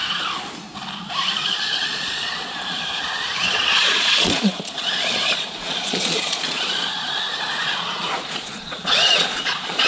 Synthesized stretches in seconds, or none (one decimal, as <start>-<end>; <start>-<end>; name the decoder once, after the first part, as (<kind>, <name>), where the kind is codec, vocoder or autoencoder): 1.5-9.9 (vocoder, Vocos)